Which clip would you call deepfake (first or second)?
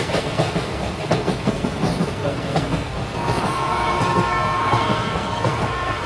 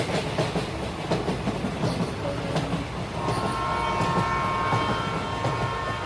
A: first